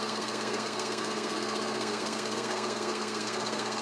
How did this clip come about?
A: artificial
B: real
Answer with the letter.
A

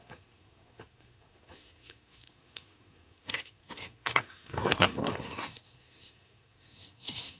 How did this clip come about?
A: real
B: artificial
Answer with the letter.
B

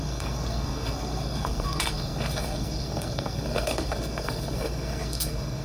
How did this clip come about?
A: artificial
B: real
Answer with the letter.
A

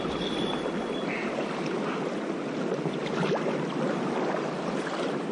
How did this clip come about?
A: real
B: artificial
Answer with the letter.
A